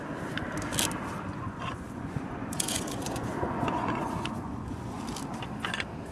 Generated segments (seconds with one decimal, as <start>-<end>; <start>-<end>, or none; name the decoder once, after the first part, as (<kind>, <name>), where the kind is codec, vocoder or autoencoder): 1.3-5.0 (vocoder, Vocos)